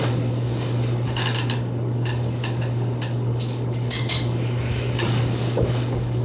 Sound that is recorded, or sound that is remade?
remade